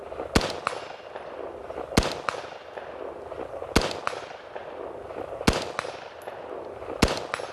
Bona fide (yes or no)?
yes